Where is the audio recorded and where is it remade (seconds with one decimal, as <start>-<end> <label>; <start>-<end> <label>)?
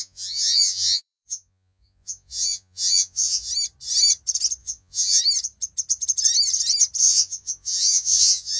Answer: 0.0-3.5 remade; 3.5-4.6 recorded; 4.6-5.2 remade; 5.2-7.0 recorded; 7.0-8.6 remade